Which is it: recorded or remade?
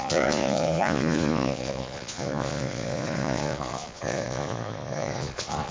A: remade